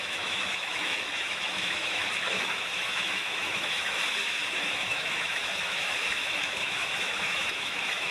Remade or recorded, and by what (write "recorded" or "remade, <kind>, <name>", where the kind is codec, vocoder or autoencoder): remade, autoencoder, DAC-VAE